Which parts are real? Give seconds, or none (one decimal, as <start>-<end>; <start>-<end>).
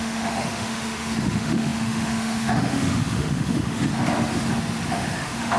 3.9-4.9